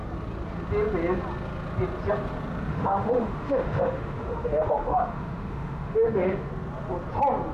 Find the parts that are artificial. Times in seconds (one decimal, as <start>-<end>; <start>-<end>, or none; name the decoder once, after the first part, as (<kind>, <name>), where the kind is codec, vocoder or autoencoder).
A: 2.7-6.5 (autoencoder, DAC-VAE)

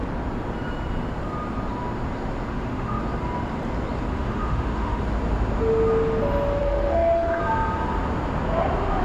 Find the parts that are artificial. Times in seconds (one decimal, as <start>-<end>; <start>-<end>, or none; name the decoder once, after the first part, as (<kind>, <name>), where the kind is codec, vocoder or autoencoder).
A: 2.5-3.0 (autoencoder, DAC-VAE); 4.1-5.0; 6.6-7.4

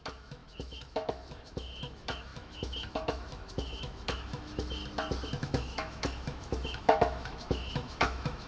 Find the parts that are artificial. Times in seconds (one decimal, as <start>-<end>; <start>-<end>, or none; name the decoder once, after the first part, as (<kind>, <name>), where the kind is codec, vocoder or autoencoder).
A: 0.0-4.8 (autoencoder, DAC-VAE); 5.4-8.5

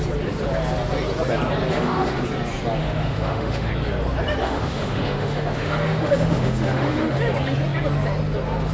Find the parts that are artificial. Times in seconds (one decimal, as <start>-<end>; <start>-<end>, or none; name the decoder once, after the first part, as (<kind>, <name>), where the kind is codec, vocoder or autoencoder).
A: 1.7-2.2 (autoencoder, DAC-VAE); 2.8-3.7; 4.4-7.2